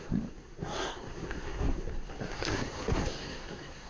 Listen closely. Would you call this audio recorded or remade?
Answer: remade